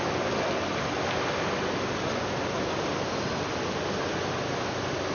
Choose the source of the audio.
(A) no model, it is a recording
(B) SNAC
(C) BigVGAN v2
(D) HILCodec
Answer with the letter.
A